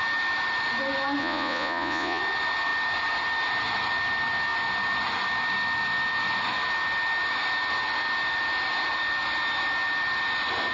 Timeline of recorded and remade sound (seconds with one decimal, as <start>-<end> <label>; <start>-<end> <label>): 0.0-1.2 recorded; 1.2-2.2 remade; 2.2-10.7 recorded